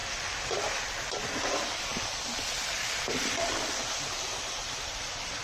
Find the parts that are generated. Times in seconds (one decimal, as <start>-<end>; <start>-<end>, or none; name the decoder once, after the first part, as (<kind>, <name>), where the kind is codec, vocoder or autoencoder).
none